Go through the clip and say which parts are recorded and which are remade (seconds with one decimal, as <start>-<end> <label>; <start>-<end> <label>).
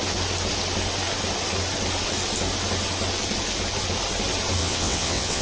0.0-4.6 recorded; 4.6-5.4 remade